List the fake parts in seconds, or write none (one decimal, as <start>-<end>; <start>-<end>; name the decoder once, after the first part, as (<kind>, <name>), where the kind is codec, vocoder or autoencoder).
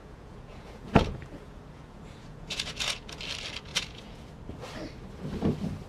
0.0-3.2 (vocoder, Vocos); 3.7-4.4